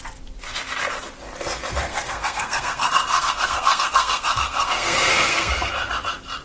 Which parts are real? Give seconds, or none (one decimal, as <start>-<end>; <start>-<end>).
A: 0.0-1.9; 5.7-6.4